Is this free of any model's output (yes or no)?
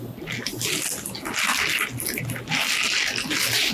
yes